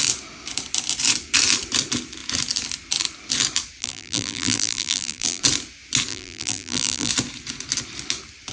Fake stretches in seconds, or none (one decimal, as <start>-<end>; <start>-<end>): 3.8-5.4; 6.1-7.1